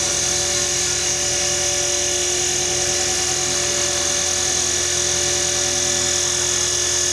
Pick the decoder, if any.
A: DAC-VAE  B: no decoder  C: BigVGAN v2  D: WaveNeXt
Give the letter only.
B